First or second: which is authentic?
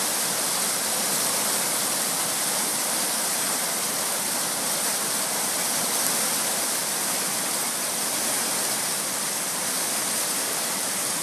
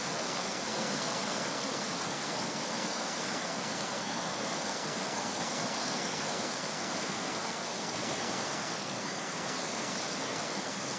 first